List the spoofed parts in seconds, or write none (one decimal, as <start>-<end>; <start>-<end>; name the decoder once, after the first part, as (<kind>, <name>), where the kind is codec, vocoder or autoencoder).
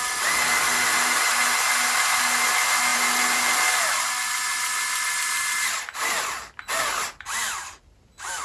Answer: 2.9-5.1 (vocoder, BigVGAN v2)